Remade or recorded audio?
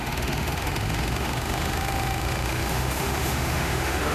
remade